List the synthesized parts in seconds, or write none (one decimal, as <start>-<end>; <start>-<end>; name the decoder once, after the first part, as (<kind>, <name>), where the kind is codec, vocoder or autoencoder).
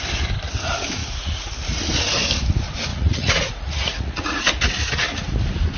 1.0-1.5 (vocoder, Vocos); 2.9-4.4